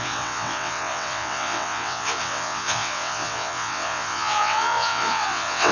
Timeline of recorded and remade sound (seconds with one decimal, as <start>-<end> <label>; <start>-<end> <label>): 0.0-5.7 remade